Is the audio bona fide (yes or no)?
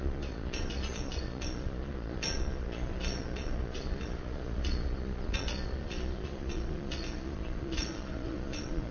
no